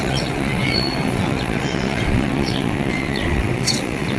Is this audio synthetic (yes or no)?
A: yes